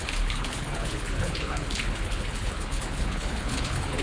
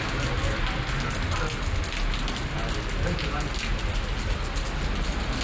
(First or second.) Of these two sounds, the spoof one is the first